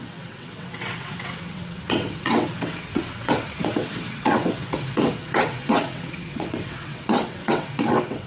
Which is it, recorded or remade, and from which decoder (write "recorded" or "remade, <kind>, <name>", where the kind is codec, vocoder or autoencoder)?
remade, vocoder, WaveNeXt